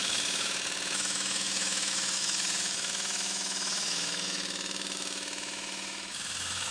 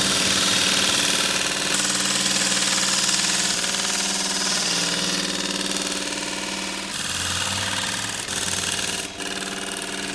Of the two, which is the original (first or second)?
second